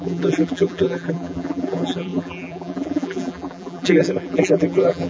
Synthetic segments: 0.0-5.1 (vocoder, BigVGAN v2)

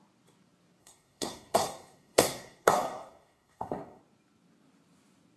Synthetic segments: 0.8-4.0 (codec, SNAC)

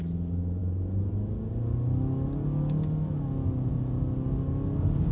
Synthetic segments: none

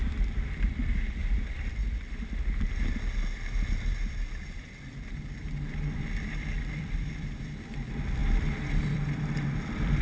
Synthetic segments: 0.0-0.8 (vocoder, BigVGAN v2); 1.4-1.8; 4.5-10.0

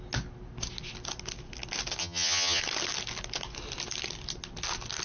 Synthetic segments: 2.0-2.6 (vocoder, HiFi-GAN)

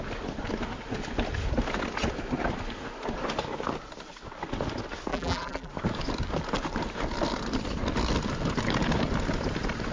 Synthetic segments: 5.1-5.7 (vocoder, BigVGAN v2)

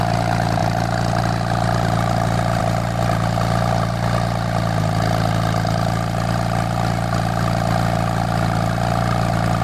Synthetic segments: none